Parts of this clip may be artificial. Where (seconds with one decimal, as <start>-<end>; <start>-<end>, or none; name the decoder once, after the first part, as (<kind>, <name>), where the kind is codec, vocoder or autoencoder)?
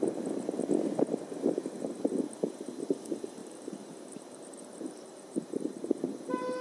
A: 3.4-6.1 (vocoder, BigVGAN v2)